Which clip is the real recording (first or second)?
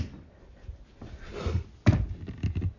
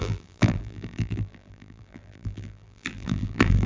first